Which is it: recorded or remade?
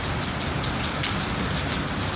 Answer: recorded